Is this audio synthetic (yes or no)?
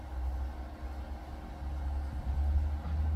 no